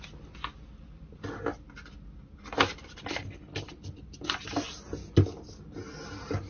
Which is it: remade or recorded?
recorded